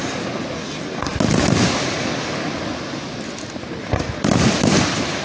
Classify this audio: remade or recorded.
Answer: recorded